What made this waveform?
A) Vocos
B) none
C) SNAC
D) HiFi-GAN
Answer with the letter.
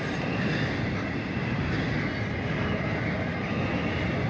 B